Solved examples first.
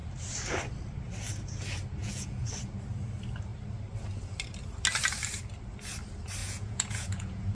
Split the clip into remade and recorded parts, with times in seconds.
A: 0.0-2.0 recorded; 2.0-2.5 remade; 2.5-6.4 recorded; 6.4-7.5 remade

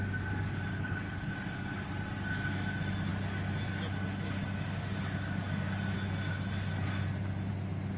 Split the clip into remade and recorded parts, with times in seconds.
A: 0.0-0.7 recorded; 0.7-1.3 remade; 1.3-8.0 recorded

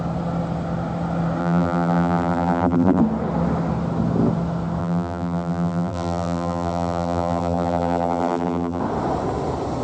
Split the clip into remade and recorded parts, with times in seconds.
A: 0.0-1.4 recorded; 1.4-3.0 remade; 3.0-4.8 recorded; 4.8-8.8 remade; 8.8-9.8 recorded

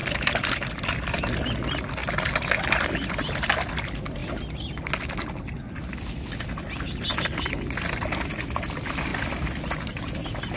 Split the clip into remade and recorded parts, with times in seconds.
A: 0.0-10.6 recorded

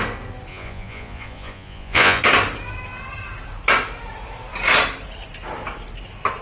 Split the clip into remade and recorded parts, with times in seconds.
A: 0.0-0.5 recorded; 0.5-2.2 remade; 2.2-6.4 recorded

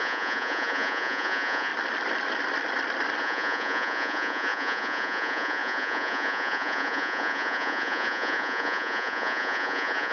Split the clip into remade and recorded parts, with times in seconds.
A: 0.0-1.7 remade; 1.7-3.2 recorded; 3.2-10.1 remade

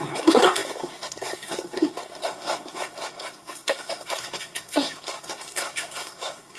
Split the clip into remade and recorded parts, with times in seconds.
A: 0.0-6.6 remade